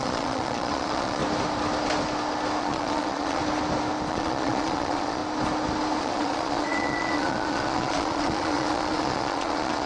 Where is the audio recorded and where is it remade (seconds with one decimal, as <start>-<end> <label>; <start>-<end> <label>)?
0.0-1.2 remade; 1.2-2.6 recorded; 2.6-3.4 remade; 3.4-4.1 recorded; 4.1-5.2 remade; 5.2-6.0 recorded; 6.0-9.9 remade